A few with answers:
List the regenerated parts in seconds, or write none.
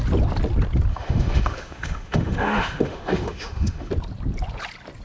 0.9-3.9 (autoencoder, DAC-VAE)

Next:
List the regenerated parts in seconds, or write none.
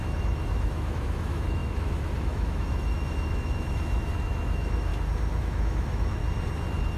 0.0-4.9 (autoencoder, DAC-VAE); 5.4-6.2